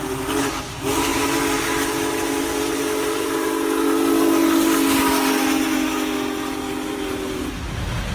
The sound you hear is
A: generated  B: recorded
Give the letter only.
B